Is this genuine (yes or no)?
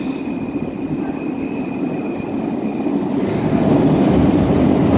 no